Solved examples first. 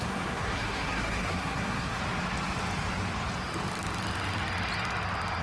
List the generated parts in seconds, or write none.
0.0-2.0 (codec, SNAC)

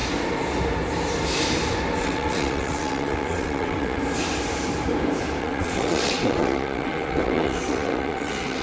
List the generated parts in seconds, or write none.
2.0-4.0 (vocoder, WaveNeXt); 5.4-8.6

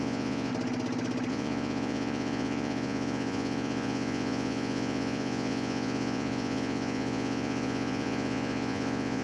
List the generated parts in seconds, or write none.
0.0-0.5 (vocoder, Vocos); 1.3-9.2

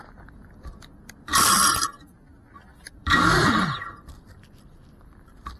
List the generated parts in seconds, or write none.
0.0-5.6 (vocoder, BigVGAN v2)

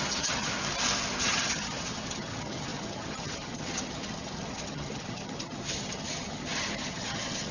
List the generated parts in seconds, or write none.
0.0-0.5 (vocoder, HiFi-GAN); 1.2-7.5

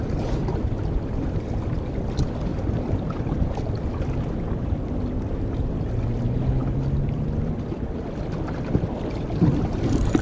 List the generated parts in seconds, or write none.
2.5-3.6 (vocoder, BigVGAN v2); 6.6-9.6

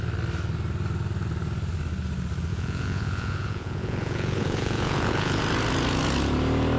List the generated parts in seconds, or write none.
2.5-5.4 (vocoder, Vocos)

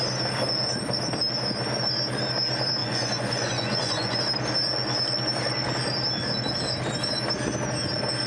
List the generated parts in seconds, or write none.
2.8-4.2 (vocoder, Vocos)